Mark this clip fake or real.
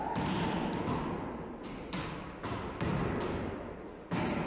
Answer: real